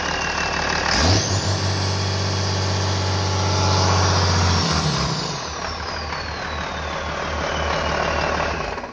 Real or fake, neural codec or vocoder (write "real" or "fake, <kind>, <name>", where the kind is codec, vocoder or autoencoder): real